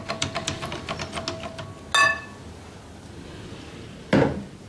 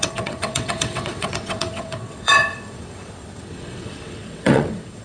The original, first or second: first